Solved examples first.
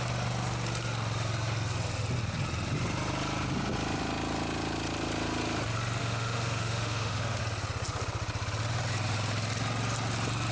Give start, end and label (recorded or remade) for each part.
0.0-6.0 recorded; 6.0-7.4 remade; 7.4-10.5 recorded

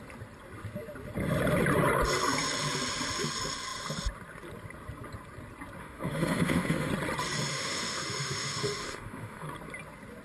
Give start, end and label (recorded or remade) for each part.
0.0-5.8 recorded; 5.8-6.9 remade; 6.9-7.5 recorded; 7.5-9.5 remade; 9.5-10.2 recorded

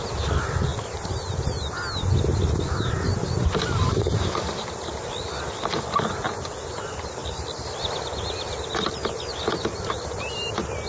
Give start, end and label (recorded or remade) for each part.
0.0-10.9 recorded

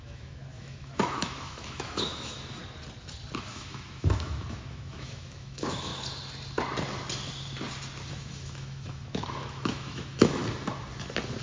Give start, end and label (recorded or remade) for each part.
0.0-2.6 remade; 2.6-3.5 recorded; 3.5-5.9 remade; 5.9-8.1 recorded; 8.1-10.4 remade; 10.4-11.4 recorded

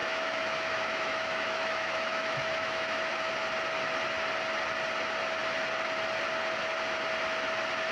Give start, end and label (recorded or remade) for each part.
0.0-3.3 remade; 3.3-7.9 recorded

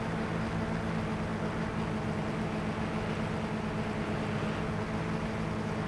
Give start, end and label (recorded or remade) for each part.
0.0-5.9 recorded

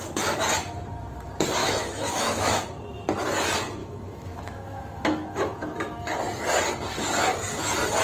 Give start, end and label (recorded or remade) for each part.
0.0-1.6 recorded; 1.6-2.6 remade; 2.6-3.8 recorded; 3.8-6.2 remade; 6.2-8.0 recorded

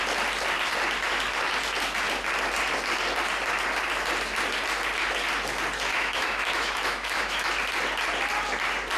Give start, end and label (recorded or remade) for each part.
0.0-5.9 recorded; 5.9-7.5 remade; 7.5-9.0 recorded